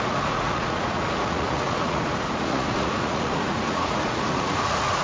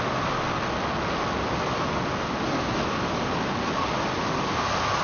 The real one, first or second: second